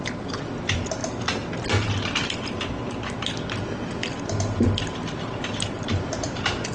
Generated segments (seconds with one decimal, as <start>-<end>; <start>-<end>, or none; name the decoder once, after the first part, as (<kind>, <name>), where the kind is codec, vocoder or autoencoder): 0.0-1.0 (vocoder, BigVGAN v2); 4.2-6.7